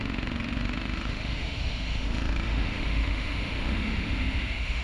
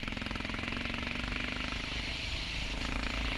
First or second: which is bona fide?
second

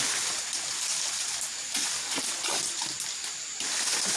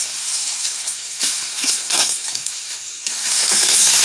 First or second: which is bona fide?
first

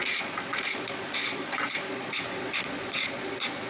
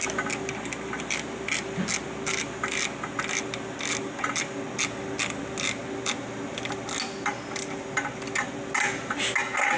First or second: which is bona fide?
second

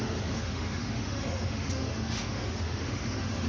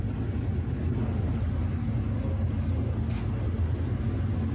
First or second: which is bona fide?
second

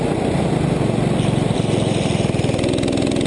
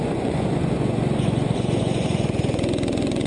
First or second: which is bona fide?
first